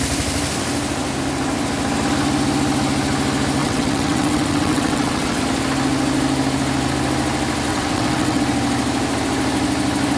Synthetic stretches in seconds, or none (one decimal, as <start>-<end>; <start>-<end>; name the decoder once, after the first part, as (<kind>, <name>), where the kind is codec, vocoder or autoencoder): 3.6-5.4 (vocoder, WaveNeXt); 7.7-8.4